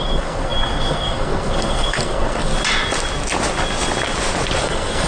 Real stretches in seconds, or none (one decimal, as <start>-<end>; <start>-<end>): 2.5-4.6